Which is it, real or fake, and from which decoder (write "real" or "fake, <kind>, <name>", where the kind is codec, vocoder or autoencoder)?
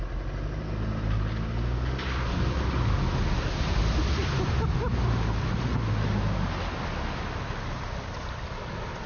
real